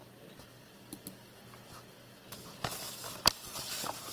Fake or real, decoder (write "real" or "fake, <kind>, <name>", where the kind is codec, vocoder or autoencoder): real